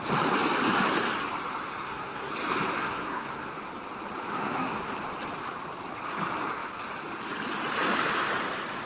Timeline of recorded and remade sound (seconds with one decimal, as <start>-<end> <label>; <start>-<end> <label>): 0.0-1.8 recorded; 1.8-2.3 remade; 2.3-2.8 recorded; 2.8-3.5 remade; 3.5-4.3 recorded; 4.3-4.9 remade; 4.9-8.9 recorded